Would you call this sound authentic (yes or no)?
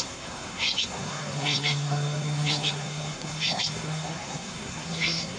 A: no